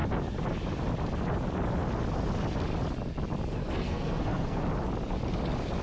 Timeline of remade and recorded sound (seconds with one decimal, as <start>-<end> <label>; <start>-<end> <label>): 0.0-3.5 recorded; 3.5-4.6 remade; 4.6-5.8 recorded